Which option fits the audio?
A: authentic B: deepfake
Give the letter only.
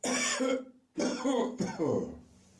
B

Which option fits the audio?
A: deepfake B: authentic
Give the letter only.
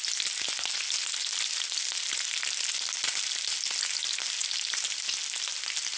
B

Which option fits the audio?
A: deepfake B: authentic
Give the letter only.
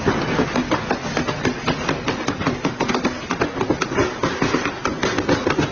B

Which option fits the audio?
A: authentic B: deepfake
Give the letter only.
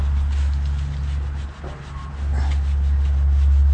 A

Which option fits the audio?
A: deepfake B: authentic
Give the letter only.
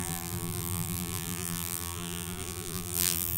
A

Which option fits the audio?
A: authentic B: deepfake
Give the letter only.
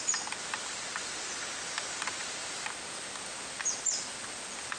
A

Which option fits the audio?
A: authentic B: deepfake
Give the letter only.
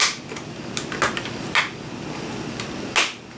A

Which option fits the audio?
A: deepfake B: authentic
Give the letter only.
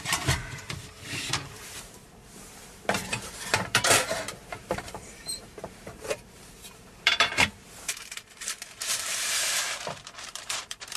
A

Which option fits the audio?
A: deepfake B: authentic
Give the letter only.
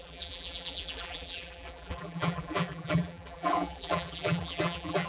A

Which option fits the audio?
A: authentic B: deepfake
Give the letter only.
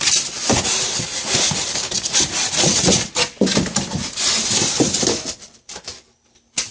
B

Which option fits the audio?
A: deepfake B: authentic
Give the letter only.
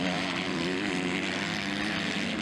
B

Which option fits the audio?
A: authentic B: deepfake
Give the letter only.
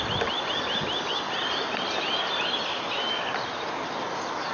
A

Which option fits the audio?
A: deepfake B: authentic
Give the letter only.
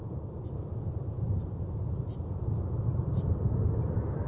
A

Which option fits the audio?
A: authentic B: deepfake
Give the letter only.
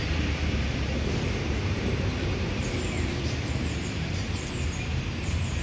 B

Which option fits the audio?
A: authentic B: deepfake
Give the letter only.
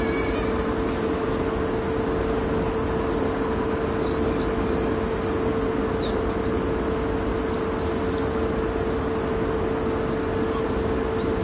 A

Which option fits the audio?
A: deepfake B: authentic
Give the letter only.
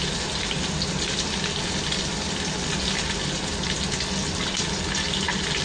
B